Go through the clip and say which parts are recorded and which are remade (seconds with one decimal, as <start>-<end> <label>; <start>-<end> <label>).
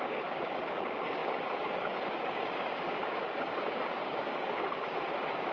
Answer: 0.0-5.5 remade